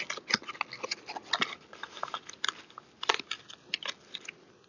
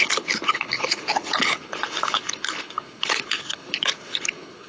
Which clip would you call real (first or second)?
first